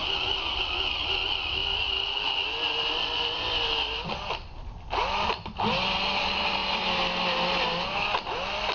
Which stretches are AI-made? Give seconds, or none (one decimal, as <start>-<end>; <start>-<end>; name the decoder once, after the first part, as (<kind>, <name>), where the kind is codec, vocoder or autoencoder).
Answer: none